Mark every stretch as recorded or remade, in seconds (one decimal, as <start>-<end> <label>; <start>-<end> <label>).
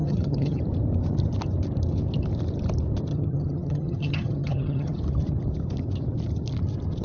0.0-0.6 remade; 0.6-3.1 recorded; 3.1-5.0 remade; 5.0-7.0 recorded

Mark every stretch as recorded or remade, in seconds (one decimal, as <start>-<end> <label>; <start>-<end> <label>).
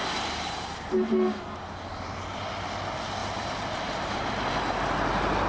0.0-2.4 remade; 2.4-3.2 recorded; 3.2-4.3 remade; 4.3-5.5 recorded